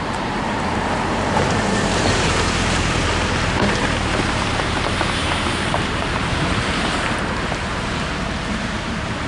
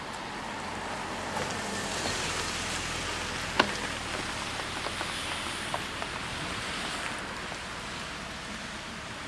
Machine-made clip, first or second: first